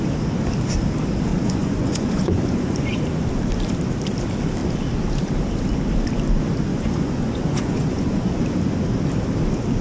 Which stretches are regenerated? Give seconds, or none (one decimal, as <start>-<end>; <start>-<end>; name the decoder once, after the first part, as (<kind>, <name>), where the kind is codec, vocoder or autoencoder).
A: 1.3-3.0 (vocoder, Vocos); 6.7-8.4